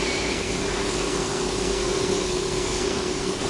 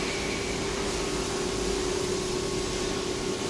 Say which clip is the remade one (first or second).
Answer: first